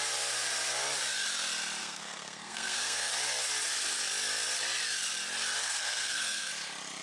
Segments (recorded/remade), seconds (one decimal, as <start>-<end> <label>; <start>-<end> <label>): 0.0-1.8 recorded; 1.8-3.1 remade; 3.1-5.6 recorded; 5.6-6.5 remade; 6.5-7.0 recorded